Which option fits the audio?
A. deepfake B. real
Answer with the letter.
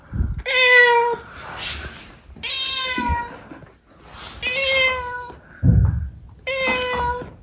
B